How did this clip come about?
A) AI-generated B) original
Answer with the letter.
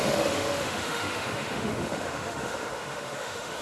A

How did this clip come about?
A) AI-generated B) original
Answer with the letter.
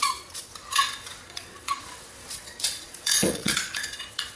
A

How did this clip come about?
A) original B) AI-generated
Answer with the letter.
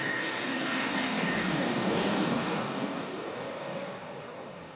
B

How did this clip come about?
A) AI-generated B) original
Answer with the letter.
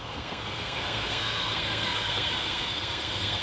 A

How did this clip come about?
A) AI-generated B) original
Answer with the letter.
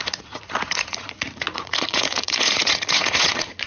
A